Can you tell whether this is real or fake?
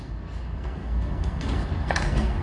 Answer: fake